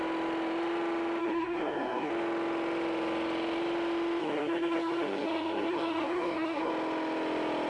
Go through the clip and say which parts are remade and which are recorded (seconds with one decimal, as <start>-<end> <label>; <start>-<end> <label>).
0.0-1.2 recorded; 1.2-2.1 remade; 2.1-4.2 recorded; 4.2-6.7 remade; 6.7-7.7 recorded